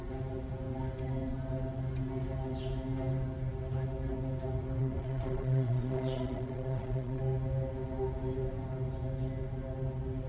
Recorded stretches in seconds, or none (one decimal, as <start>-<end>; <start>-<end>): 0.0-4.8; 7.2-10.3

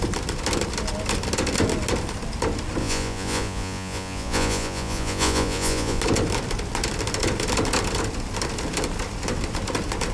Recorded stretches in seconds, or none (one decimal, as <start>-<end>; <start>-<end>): 0.0-2.8; 6.0-10.1

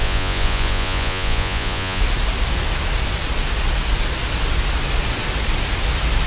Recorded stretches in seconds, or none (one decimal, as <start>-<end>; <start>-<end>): 2.0-6.3

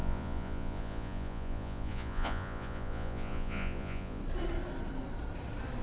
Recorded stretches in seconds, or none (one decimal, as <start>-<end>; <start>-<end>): 4.2-5.8

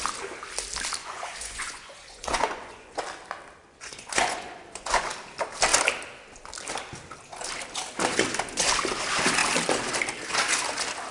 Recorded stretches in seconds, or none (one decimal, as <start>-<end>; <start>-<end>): 0.0-1.0; 3.0-3.6; 5.1-11.1